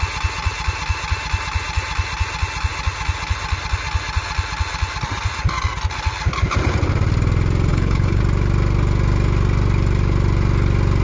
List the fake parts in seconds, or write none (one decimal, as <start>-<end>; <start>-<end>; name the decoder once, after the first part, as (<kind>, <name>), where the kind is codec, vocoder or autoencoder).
7.7-8.2 (codec, HILCodec)